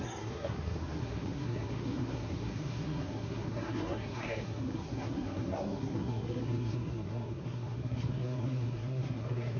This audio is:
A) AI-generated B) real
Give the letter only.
A